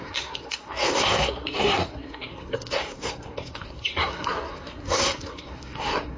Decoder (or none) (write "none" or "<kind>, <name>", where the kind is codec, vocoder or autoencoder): codec, SNAC